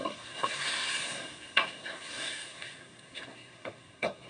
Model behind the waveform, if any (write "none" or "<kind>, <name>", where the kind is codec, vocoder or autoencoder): codec, SNAC